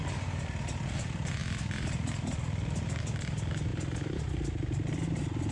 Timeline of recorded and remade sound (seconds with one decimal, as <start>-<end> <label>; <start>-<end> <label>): 0.0-3.7 recorded; 3.7-4.2 remade; 4.2-5.5 recorded